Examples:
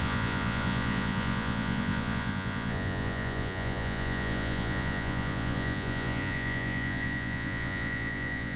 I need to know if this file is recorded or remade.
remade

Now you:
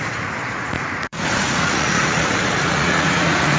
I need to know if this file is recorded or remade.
remade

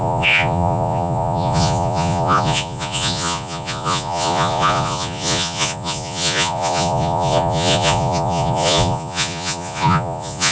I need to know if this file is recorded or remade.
remade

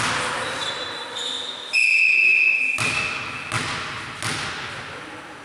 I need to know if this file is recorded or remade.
recorded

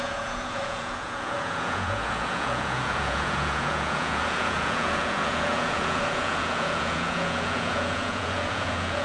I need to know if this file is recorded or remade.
remade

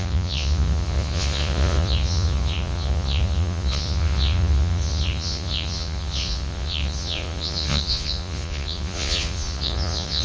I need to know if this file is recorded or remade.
remade